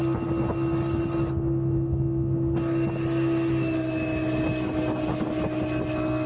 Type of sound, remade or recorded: recorded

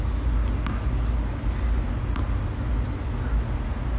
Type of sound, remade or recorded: recorded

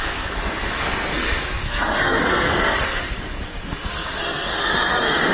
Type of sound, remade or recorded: remade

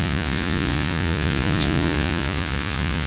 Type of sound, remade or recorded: remade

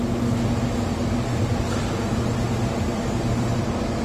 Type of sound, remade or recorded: recorded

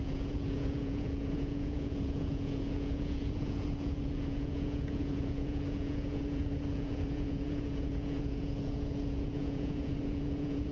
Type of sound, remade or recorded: remade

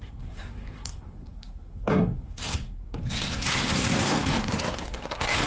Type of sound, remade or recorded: remade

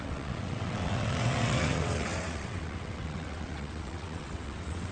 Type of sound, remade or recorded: remade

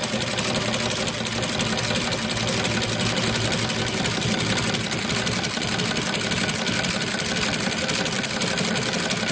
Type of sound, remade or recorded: recorded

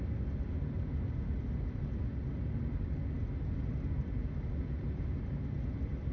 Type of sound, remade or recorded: recorded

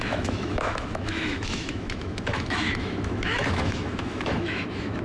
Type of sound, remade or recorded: remade